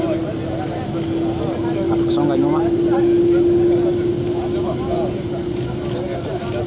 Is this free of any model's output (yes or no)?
yes